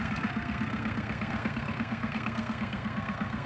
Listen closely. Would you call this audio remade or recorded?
remade